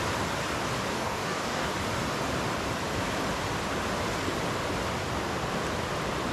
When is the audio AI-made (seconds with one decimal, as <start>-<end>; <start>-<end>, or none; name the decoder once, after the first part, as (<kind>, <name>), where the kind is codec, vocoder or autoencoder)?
0.9-1.7 (codec, DAC)